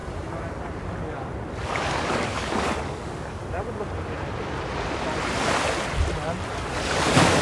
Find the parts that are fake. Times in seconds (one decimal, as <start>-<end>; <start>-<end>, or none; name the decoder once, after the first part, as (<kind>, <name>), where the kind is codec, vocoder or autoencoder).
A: 1.6-3.4 (codec, DAC); 6.5-7.4